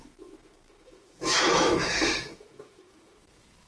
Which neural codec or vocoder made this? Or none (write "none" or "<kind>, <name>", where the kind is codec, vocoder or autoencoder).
autoencoder, DAC-VAE